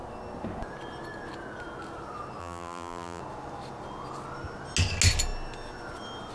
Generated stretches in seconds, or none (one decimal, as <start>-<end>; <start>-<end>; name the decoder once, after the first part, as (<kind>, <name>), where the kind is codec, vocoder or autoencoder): 2.4-3.2 (vocoder, BigVGAN v2)

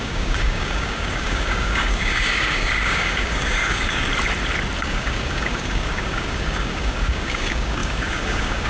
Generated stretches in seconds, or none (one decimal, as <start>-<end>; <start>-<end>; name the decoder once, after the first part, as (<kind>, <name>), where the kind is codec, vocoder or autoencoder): 0.0-4.1 (codec, DAC); 4.8-8.7

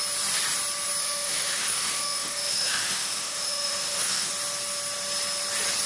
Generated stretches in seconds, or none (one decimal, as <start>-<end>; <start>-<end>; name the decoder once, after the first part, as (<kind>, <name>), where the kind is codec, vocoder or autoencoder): 1.0-4.3 (autoencoder, DAC-VAE)

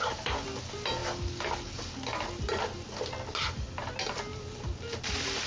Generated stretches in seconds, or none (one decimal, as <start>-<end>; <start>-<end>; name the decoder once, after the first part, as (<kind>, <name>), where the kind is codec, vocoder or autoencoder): none

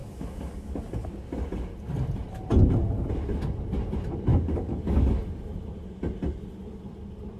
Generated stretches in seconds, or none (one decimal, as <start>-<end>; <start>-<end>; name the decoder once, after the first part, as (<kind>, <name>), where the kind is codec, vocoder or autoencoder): 0.0-0.8 (codec, DAC); 4.3-5.1

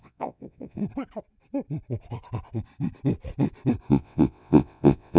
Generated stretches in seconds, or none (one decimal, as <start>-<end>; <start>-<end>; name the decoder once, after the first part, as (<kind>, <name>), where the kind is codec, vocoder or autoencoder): 0.0-0.8 (vocoder, WaveNeXt); 3.9-5.2

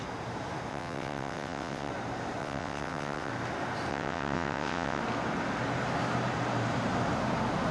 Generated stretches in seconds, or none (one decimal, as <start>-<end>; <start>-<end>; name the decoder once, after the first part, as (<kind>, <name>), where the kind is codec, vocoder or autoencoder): 0.7-1.9 (vocoder, WaveNeXt); 2.4-3.3; 3.9-5.0